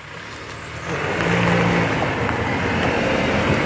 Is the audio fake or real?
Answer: real